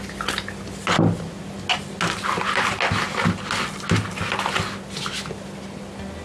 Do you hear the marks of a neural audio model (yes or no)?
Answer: no